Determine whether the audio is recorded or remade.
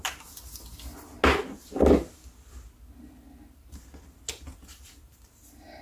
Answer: recorded